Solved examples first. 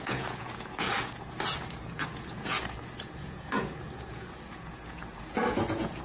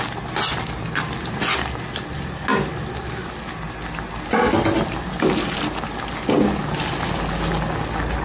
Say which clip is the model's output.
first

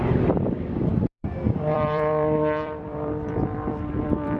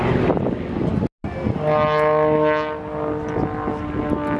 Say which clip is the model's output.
first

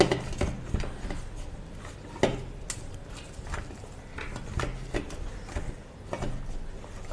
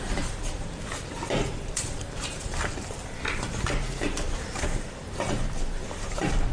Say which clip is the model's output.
second